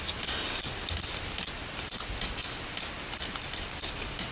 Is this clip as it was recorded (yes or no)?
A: yes